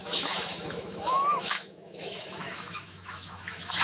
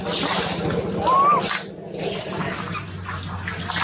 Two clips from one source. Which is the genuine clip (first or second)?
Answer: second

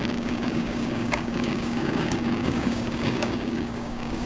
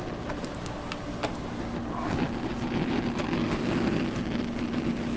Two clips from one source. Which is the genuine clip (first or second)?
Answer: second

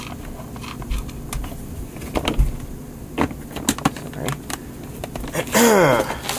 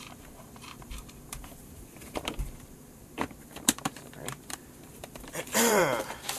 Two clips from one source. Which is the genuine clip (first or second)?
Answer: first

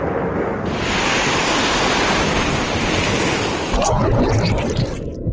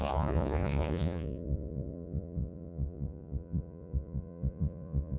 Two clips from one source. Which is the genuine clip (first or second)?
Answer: first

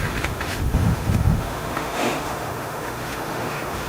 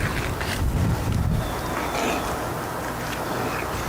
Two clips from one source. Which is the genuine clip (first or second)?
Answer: second